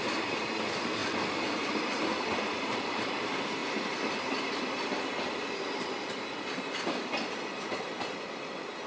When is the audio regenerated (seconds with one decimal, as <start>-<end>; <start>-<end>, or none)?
none